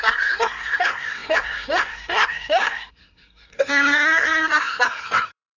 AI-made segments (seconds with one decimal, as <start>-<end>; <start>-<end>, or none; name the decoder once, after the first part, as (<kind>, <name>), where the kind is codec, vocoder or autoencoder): 0.0-5.6 (codec, SNAC)